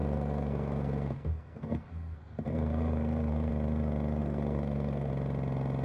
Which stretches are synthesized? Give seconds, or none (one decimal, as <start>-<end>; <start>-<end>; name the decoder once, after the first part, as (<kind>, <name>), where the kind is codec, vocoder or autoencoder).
0.0-3.5 (codec, SNAC); 4.2-5.1